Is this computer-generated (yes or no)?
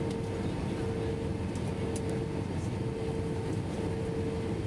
no